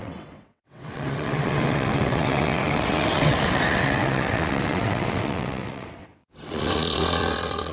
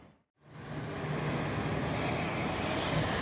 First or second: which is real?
second